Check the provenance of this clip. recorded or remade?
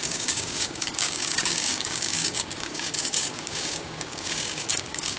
remade